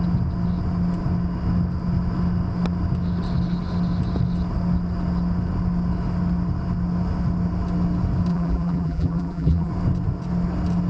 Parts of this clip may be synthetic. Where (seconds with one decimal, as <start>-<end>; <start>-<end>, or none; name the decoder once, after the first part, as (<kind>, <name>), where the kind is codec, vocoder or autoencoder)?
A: 8.3-9.7 (vocoder, BigVGAN v2)